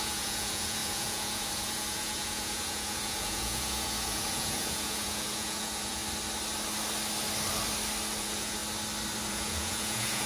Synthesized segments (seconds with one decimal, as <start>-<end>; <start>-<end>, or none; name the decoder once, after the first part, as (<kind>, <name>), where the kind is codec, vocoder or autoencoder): 0.0-6.0 (vocoder, Vocos); 8.2-8.6; 9.3-10.3